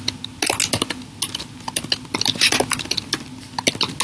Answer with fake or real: real